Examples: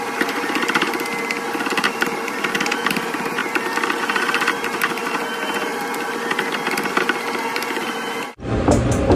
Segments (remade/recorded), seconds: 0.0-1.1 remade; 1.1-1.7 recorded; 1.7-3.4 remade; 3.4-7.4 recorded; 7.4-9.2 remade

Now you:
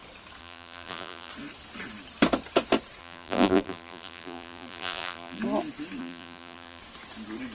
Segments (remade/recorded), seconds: 0.0-0.4 recorded; 0.4-1.3 remade; 1.3-3.0 recorded; 3.0-5.4 remade; 5.4-6.0 recorded; 6.0-6.8 remade; 6.8-7.5 recorded

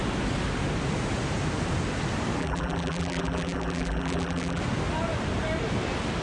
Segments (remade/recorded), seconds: 0.0-2.4 recorded; 2.4-4.6 remade; 4.6-6.2 recorded

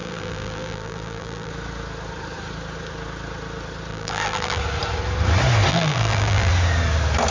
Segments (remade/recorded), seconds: 0.0-1.5 remade; 1.5-3.9 recorded; 3.9-4.6 remade; 4.6-5.7 recorded; 5.7-6.5 remade; 6.5-7.3 recorded